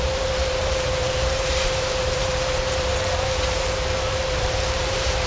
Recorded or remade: remade